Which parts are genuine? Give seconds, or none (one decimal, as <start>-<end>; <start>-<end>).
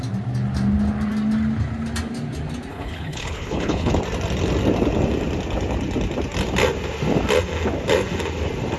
0.0-2.7; 3.9-8.8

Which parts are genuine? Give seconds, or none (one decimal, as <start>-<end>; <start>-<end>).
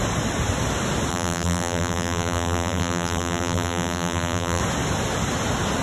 0.0-1.1; 4.6-5.8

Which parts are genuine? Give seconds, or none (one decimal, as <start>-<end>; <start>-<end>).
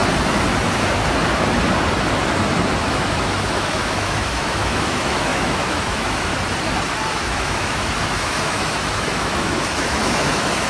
0.0-2.8; 6.3-7.0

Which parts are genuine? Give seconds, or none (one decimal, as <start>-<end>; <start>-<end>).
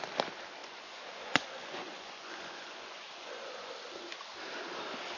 0.0-0.6; 3.7-5.2